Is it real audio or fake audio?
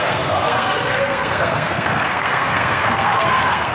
fake